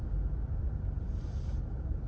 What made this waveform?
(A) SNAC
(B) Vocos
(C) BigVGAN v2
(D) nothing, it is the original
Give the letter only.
D